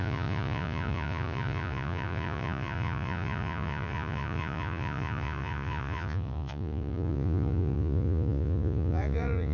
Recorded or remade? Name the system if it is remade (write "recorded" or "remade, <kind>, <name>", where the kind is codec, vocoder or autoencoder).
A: remade, vocoder, Vocos